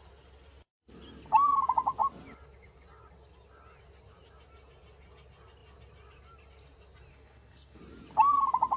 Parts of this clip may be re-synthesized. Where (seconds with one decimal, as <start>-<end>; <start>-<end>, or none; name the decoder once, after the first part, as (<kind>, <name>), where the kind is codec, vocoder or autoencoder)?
7.1-7.8 (codec, SNAC)